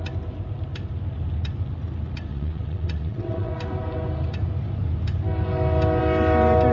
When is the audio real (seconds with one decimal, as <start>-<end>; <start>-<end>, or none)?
0.0-2.3; 3.5-6.7